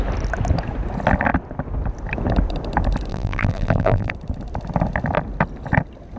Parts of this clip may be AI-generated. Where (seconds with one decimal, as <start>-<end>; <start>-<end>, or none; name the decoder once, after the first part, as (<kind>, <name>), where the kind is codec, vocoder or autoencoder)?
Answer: 3.1-4.1 (vocoder, BigVGAN v2)